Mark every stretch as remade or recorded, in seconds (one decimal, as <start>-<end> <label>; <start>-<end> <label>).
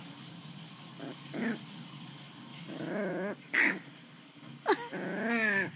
0.0-2.5 recorded; 2.5-3.1 remade; 3.1-5.8 recorded